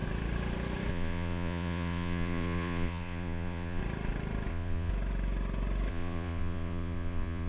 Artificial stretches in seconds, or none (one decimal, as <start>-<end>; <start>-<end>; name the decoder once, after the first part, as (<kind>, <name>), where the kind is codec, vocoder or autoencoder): 0.9-3.8 (vocoder, Vocos); 4.5-4.9; 5.9-7.5

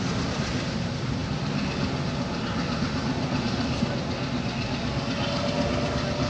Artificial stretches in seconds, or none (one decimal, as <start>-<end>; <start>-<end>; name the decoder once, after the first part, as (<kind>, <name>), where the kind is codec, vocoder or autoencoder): none

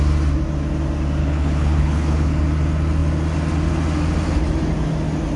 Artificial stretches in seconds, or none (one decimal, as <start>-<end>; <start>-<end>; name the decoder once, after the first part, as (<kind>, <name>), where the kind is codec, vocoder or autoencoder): 1.2-2.4 (codec, HILCodec)

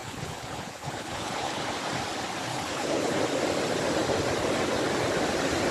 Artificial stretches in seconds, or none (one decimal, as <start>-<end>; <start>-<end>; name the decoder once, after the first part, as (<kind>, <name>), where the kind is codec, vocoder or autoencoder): 0.0-1.6 (codec, HILCodec); 2.5-3.2

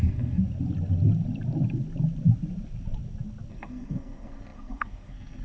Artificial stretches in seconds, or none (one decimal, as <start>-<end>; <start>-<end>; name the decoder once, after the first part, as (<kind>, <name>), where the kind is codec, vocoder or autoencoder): 0.0-0.4 (codec, SNAC); 3.5-5.4

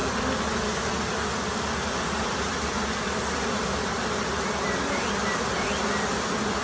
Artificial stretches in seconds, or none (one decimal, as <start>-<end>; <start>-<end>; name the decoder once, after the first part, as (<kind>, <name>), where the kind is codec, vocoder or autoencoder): none

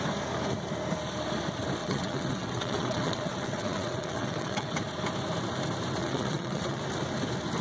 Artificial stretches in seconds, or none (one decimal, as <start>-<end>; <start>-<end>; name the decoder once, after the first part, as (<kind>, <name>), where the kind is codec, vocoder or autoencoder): 1.8-4.7 (vocoder, WaveNeXt); 6.0-6.8